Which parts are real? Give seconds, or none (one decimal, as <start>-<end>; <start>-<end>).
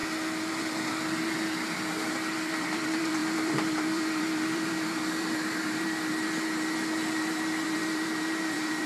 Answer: 0.0-0.5